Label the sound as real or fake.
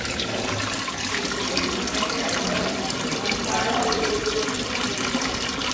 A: real